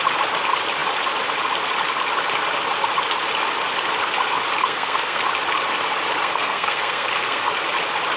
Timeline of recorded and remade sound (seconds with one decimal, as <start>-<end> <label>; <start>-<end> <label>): 0.0-4.6 recorded; 4.6-5.2 remade; 5.2-6.2 recorded; 6.2-7.5 remade; 7.5-8.2 recorded

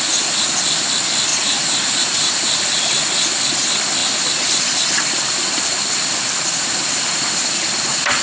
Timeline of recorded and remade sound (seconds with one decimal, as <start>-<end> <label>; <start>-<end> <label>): 0.0-1.3 recorded; 1.3-2.9 remade; 2.9-8.2 recorded

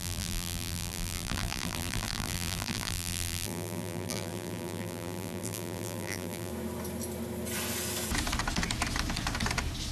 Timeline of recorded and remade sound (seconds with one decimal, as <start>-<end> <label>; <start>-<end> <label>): 0.0-6.5 remade; 6.5-9.9 recorded

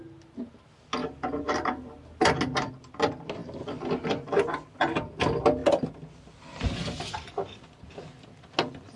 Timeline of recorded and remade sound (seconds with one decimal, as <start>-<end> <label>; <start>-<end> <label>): 0.0-9.0 recorded

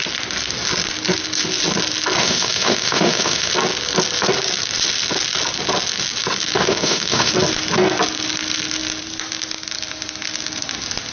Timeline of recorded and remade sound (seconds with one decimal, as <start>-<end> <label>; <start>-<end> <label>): 0.0-2.2 recorded; 2.2-3.5 remade; 3.5-6.6 recorded; 6.6-7.3 remade; 7.3-11.1 recorded

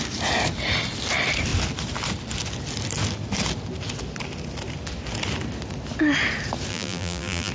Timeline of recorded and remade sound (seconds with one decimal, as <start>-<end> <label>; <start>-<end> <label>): 0.0-6.7 recorded; 6.7-7.5 remade